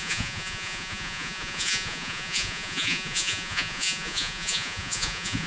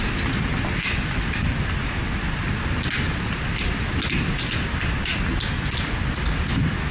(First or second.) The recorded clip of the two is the second